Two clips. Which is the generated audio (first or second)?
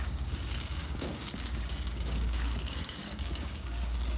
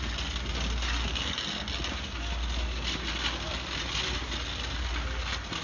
first